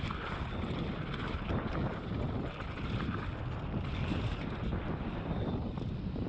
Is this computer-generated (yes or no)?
no